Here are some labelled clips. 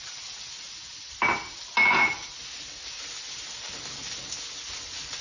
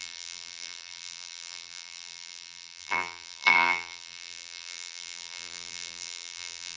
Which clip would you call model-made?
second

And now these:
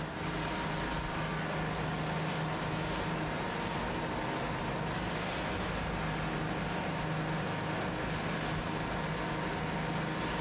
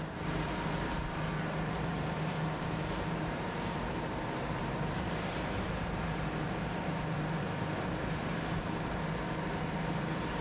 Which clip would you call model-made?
second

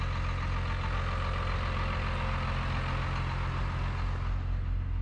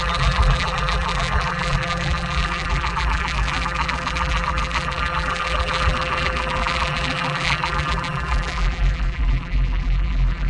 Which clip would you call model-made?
second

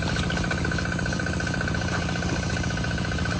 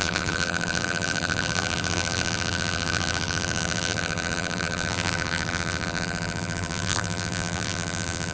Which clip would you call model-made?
second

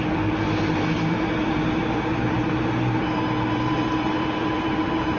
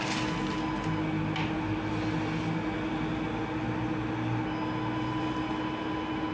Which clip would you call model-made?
first